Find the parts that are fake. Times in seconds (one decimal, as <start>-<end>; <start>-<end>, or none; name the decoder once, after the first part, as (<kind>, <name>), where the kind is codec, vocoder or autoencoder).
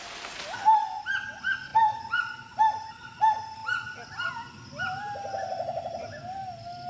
none